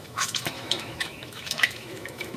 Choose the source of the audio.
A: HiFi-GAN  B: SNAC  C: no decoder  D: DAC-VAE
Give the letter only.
D